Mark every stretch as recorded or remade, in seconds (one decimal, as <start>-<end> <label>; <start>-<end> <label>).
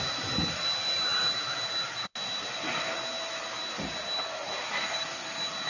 0.0-5.7 recorded